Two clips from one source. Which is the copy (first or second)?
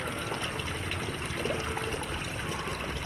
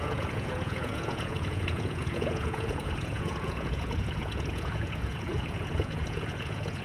second